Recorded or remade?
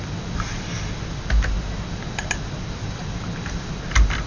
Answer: recorded